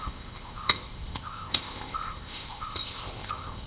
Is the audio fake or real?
fake